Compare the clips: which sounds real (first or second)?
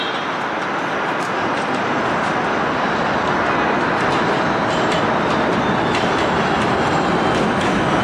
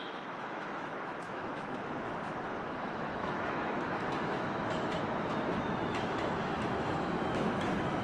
first